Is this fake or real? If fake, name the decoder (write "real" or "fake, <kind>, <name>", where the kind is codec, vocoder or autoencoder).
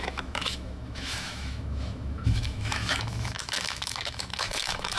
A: fake, autoencoder, DAC-VAE